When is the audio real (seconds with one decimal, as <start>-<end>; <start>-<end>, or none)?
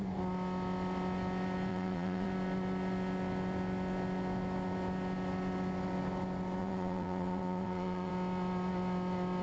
0.0-1.7; 2.3-6.6; 8.1-9.4